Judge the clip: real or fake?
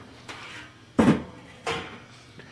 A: real